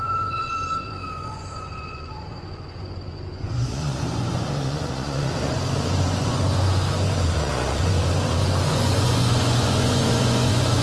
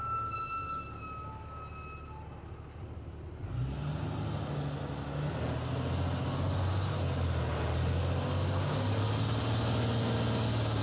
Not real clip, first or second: first